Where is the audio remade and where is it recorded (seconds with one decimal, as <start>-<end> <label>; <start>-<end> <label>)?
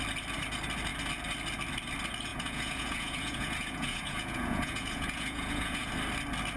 0.0-2.3 recorded; 2.3-5.9 remade; 5.9-6.6 recorded